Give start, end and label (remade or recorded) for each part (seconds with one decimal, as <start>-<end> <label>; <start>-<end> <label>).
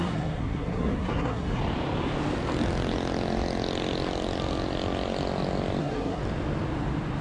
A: 0.0-1.6 remade; 1.6-5.8 recorded; 5.8-6.2 remade; 6.2-7.2 recorded